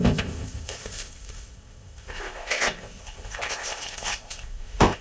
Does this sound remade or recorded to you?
remade